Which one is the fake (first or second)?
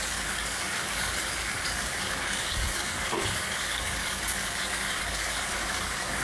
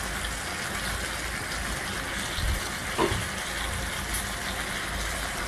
first